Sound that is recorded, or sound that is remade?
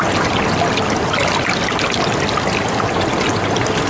recorded